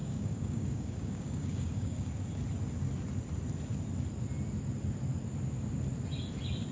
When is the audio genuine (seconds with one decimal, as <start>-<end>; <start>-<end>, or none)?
2.1-6.7